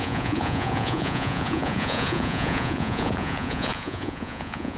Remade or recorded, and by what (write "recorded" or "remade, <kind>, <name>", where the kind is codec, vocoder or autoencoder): remade, vocoder, Vocos